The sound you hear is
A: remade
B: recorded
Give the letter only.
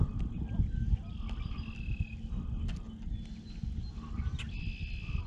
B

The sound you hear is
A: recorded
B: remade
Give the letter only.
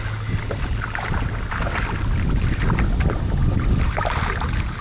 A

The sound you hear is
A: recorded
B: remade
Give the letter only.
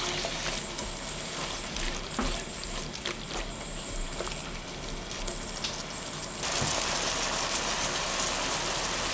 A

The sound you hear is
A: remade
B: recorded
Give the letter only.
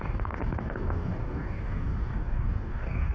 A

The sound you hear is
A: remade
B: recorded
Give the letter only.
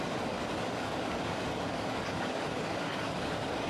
A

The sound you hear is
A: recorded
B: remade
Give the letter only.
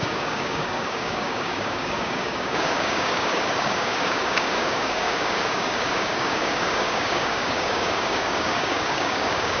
B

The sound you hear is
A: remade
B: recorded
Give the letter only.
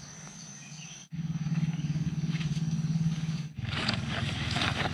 A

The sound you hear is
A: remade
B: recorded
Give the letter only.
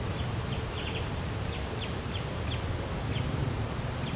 B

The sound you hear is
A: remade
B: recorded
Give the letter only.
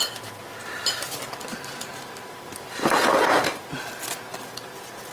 B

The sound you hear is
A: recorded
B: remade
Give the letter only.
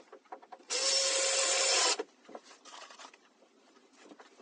A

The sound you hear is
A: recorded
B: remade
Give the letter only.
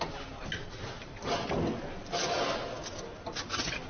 A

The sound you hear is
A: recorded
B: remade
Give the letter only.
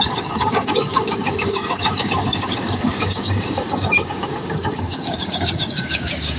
B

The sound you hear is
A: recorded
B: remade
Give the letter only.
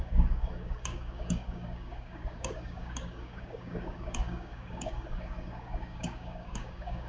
B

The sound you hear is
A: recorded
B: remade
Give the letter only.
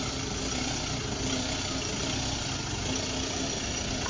A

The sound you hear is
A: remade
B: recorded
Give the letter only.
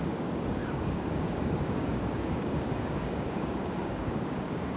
A